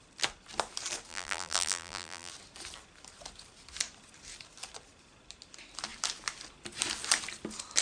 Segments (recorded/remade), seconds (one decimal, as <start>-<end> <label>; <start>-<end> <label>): 0.0-1.1 recorded; 1.1-2.3 remade; 2.3-7.8 recorded